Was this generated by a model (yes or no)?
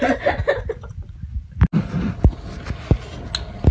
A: no